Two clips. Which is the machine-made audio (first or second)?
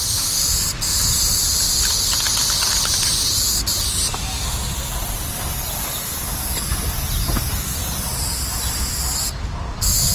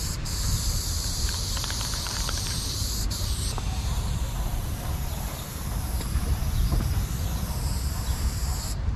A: second